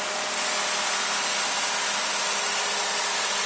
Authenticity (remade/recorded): recorded